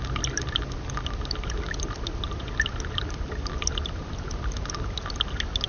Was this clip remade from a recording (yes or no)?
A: no